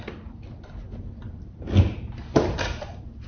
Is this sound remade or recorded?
recorded